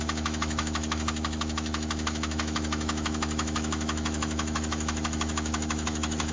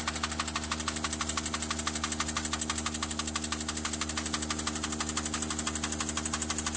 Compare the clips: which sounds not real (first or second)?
first